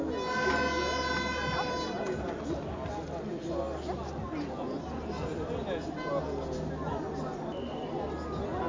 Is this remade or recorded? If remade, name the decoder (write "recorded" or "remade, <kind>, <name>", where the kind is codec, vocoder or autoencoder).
recorded